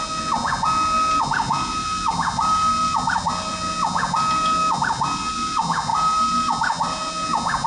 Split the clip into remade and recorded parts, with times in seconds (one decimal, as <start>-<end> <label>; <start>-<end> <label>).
0.0-7.7 recorded